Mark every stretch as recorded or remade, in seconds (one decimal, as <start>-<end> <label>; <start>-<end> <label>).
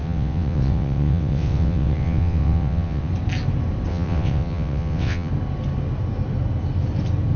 0.0-3.1 remade; 3.1-3.9 recorded; 3.9-5.3 remade; 5.3-7.4 recorded